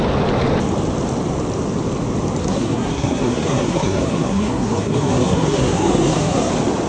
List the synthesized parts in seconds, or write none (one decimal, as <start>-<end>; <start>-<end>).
2.4-6.5